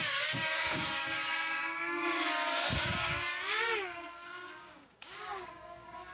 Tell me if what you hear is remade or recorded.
remade